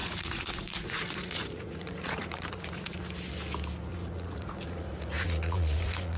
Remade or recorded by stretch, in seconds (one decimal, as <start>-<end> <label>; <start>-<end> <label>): 0.0-3.0 remade; 3.0-3.9 recorded; 3.9-6.2 remade